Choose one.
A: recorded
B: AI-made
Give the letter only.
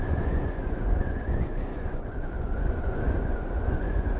B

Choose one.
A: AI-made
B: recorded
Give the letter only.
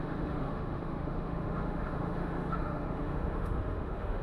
A